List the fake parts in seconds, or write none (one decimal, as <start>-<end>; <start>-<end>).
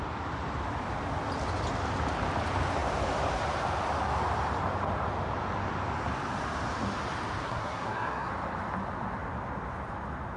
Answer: 7.4-8.3